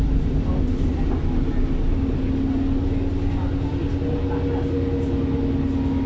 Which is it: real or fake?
real